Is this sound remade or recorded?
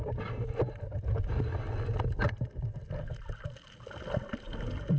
recorded